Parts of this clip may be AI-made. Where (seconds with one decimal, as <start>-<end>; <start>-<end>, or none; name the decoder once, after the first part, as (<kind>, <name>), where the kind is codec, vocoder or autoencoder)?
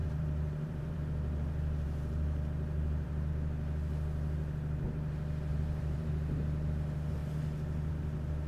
0.0-3.3 (vocoder, BigVGAN v2); 5.5-6.1